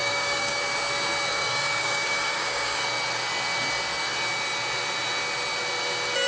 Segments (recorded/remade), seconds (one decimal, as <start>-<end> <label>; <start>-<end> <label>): 0.0-0.6 remade; 0.6-1.3 recorded; 1.3-2.8 remade; 2.8-6.3 recorded

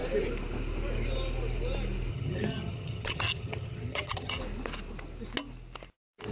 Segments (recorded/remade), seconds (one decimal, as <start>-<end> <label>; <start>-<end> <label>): 0.0-2.1 recorded; 2.1-4.4 remade; 4.4-6.3 recorded

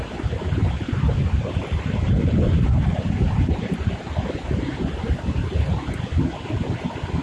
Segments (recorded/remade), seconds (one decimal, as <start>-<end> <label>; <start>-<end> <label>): 0.0-0.6 recorded; 0.6-4.9 remade; 4.9-7.2 recorded